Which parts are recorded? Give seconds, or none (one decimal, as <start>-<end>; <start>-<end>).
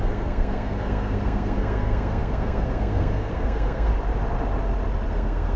3.9-5.1